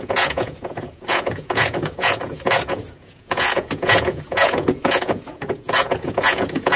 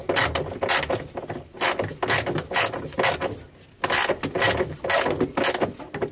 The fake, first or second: first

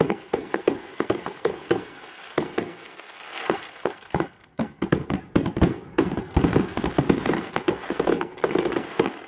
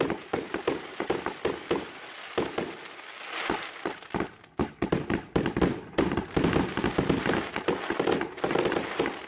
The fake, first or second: first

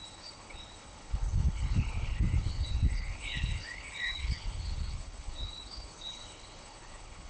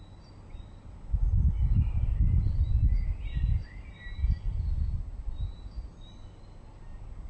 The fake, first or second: first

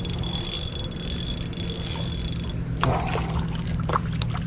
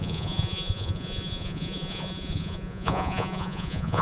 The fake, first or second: second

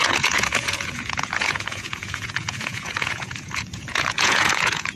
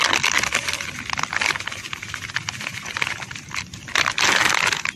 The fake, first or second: first